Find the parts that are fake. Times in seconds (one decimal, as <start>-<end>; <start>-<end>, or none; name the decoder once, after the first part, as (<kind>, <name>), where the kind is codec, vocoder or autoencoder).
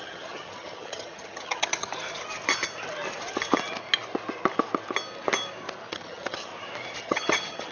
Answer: 0.0-1.9 (vocoder, HiFi-GAN); 5.9-6.5; 7.0-7.7